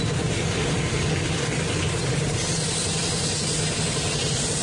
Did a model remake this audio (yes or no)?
no